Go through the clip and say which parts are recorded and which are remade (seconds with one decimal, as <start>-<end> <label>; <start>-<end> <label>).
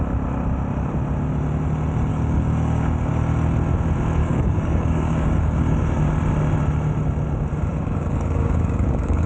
0.0-2.1 recorded; 2.1-3.1 remade; 3.1-4.2 recorded; 4.2-6.0 remade; 6.0-7.7 recorded; 7.7-9.3 remade